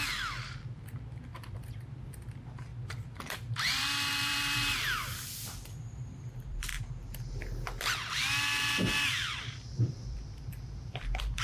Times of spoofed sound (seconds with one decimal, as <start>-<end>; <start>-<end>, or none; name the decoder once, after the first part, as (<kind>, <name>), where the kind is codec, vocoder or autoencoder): 2.7-6.8 (vocoder, BigVGAN v2); 9.7-11.4